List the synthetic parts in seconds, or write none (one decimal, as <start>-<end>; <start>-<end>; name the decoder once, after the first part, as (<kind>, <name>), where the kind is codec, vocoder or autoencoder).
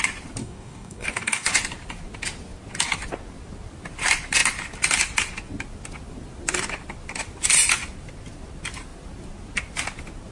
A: 0.4-1.5 (codec, DAC)